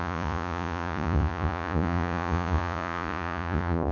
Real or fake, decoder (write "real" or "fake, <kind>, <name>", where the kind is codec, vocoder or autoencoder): fake, vocoder, Vocos